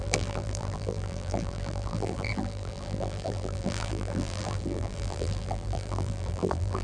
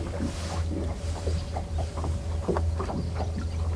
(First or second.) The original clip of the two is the second